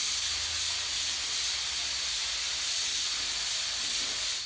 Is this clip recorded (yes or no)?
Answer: yes